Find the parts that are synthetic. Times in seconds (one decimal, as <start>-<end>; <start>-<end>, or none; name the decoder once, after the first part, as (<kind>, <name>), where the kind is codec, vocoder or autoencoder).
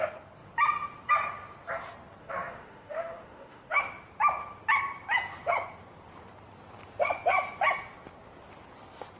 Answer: 2.2-3.9 (autoencoder, DAC-VAE)